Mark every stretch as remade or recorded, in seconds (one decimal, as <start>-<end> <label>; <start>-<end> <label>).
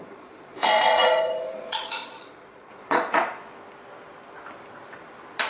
0.0-3.4 remade; 3.4-5.5 recorded